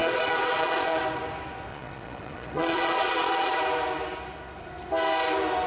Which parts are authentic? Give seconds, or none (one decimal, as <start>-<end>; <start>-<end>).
1.0-1.7; 3.6-5.7